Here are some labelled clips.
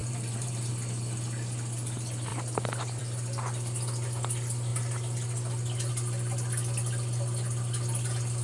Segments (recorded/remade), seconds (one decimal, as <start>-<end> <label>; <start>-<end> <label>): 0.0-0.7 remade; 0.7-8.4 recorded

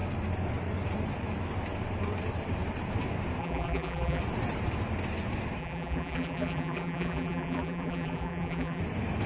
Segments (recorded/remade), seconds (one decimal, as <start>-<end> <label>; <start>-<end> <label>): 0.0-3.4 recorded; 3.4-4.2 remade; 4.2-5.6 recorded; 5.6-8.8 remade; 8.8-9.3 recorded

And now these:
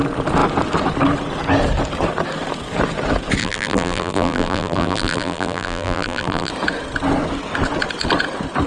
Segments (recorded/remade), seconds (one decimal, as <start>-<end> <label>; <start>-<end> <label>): 0.0-3.4 recorded; 3.4-6.5 remade; 6.5-8.7 recorded

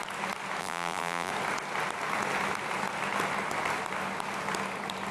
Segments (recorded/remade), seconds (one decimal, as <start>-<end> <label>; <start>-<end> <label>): 0.0-0.6 recorded; 0.6-1.3 remade; 1.3-5.1 recorded

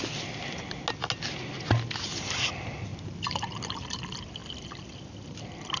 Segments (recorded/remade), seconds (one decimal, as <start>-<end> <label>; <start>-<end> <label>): 0.0-2.9 recorded; 2.9-4.0 remade; 4.0-5.8 recorded

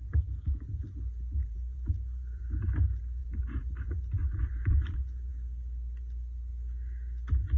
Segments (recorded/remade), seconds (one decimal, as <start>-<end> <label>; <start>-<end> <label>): 0.0-1.4 recorded; 1.4-2.7 remade; 2.7-3.2 recorded; 3.2-5.3 remade; 5.3-7.6 recorded